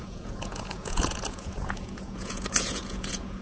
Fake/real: fake